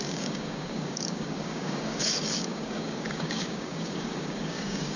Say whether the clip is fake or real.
fake